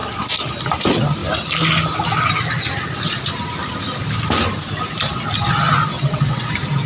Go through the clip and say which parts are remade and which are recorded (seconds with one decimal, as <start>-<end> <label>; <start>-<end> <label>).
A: 0.0-5.9 recorded; 5.9-6.5 remade; 6.5-6.9 recorded